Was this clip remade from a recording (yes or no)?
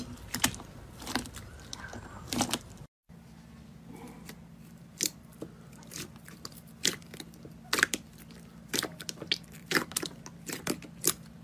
no